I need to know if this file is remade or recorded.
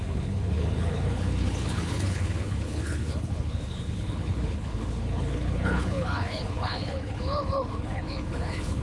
remade